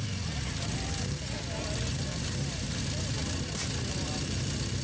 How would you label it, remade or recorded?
recorded